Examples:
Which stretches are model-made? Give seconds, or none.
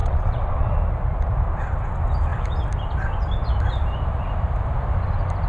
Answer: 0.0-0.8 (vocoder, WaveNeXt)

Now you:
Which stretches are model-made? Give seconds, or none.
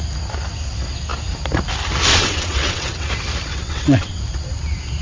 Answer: 2.1-3.1 (vocoder, WaveNeXt); 3.5-4.2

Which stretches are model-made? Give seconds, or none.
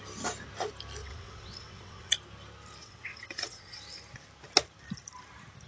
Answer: 1.0-2.1 (vocoder, WaveNeXt); 2.8-3.8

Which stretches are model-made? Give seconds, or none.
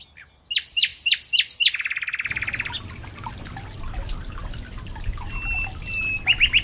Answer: none